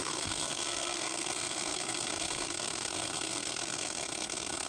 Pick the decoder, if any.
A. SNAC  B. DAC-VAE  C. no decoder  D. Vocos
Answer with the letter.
A